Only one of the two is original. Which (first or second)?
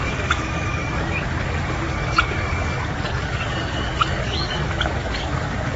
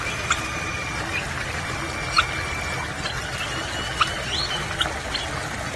second